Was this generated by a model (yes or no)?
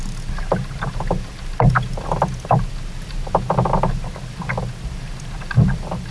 no